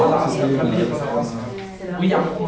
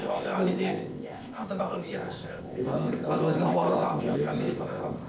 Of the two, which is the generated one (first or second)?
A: second